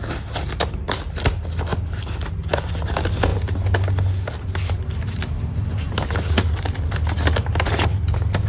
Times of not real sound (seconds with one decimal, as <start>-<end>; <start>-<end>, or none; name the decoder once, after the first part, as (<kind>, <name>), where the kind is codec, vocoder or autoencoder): none